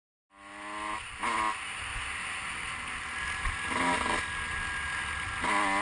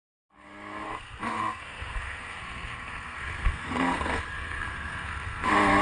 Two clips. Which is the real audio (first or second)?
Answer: first